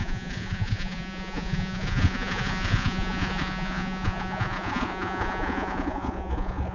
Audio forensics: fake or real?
fake